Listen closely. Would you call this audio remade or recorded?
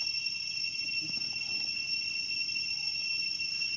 recorded